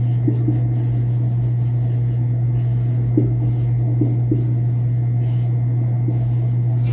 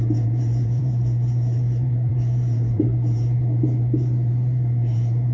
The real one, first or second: first